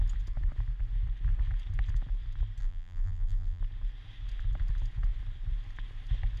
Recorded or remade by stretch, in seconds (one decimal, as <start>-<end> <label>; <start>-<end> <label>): 0.0-2.6 recorded; 2.6-3.6 remade; 3.6-6.4 recorded